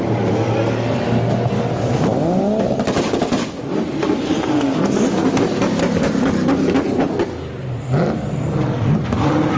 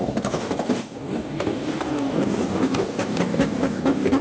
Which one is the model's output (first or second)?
second